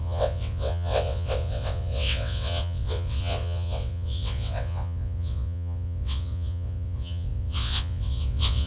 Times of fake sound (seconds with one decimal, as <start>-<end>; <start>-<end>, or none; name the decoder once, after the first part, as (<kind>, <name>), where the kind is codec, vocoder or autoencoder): 0.0-8.7 (vocoder, WaveNeXt)

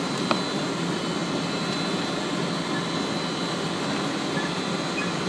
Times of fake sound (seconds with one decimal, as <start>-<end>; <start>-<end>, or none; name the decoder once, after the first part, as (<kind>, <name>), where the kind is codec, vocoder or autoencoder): none

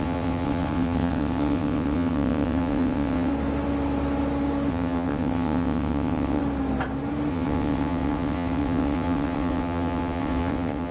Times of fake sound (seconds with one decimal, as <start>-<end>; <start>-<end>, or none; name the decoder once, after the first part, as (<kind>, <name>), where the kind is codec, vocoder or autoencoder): 0.0-3.3 (vocoder, WaveNeXt); 4.7-6.4; 7.3-10.9

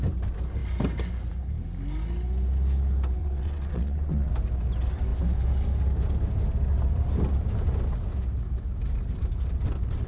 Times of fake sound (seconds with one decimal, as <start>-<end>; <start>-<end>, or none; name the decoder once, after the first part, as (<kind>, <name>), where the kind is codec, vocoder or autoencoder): 3.2-4.3 (vocoder, WaveNeXt)

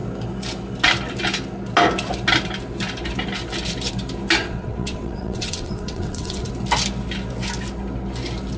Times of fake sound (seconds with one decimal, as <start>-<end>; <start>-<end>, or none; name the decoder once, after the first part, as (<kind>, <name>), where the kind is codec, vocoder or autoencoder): 4.4-6.5 (vocoder, WaveNeXt)